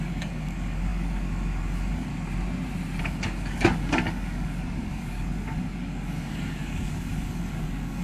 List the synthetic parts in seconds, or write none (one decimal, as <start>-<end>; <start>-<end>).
0.0-2.1; 3.0-8.0